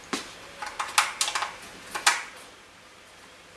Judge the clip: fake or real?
real